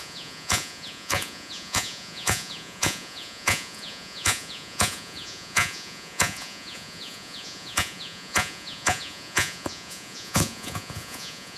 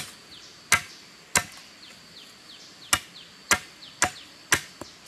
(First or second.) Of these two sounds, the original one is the second